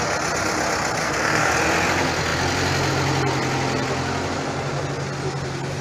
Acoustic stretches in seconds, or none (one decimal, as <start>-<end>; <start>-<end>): 0.0-1.0; 1.5-5.8